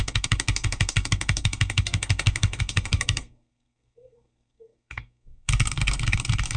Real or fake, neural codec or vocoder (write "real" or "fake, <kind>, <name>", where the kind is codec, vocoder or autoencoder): fake, codec, SNAC